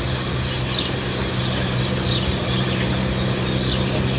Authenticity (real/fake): real